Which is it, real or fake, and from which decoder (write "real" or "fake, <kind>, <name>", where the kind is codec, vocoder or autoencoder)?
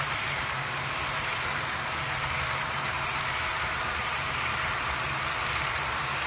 fake, vocoder, BigVGAN v2